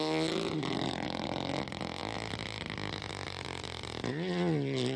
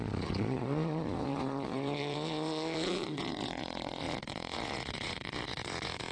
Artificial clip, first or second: second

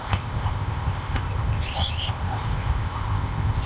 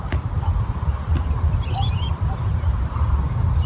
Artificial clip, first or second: first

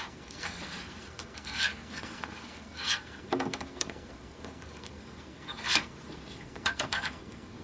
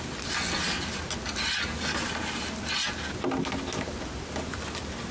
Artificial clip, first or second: first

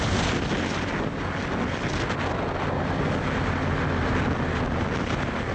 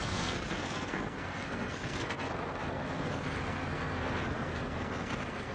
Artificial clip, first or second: second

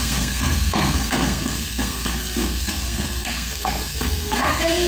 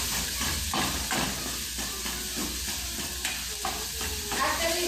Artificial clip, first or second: first